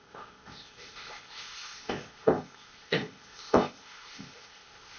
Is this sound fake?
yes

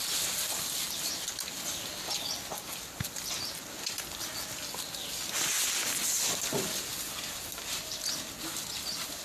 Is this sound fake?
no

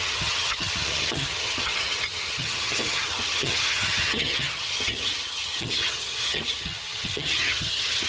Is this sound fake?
yes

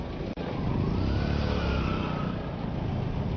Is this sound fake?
no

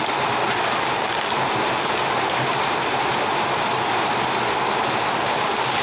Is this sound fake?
no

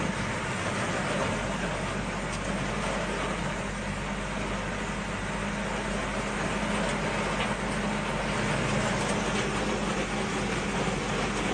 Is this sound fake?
no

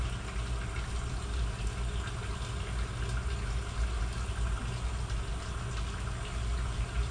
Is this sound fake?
no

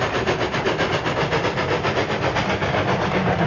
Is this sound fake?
no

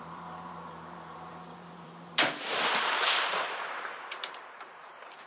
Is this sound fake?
yes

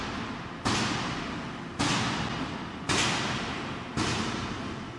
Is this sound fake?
no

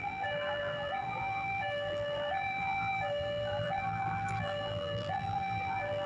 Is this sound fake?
yes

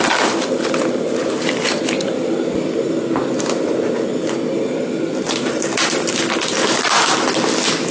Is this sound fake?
no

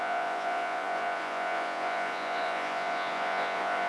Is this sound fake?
yes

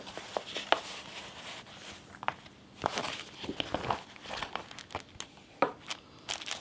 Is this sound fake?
no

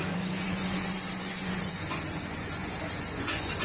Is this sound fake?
yes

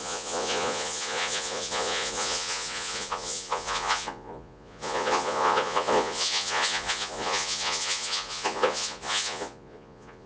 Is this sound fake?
yes